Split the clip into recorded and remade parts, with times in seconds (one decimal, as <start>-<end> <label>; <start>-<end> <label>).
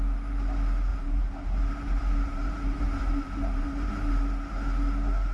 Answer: 0.0-0.9 recorded; 0.9-4.1 remade; 4.1-5.3 recorded